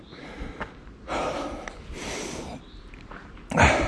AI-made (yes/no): no